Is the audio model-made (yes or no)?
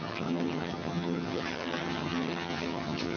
yes